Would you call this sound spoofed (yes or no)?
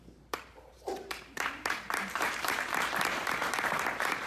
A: yes